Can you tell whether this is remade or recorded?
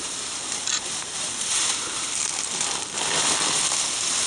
recorded